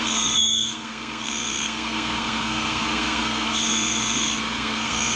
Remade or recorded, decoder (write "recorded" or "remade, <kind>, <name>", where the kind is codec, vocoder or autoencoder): remade, codec, SNAC